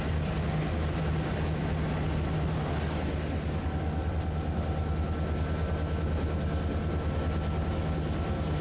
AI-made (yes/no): no